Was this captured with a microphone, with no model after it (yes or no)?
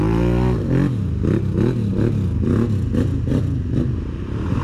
yes